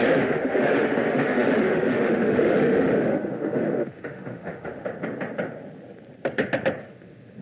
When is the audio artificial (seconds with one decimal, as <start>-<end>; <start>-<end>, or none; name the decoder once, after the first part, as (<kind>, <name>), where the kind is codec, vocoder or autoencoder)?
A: 0.0-4.8 (autoencoder, DAC-VAE); 6.9-7.4